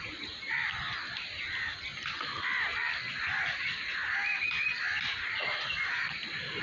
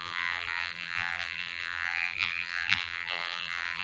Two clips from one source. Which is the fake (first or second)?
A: second